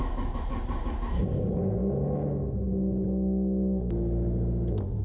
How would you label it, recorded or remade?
remade